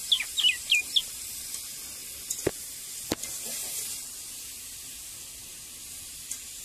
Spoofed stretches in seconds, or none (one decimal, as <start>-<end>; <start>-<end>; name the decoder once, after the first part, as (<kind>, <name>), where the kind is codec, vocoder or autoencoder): none